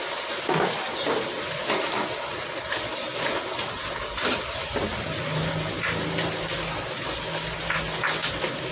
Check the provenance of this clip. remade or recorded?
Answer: recorded